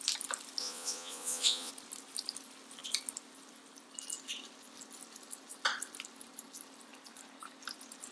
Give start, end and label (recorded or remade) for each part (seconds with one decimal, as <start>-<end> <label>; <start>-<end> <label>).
0.0-0.6 recorded; 0.6-1.7 remade; 1.7-8.1 recorded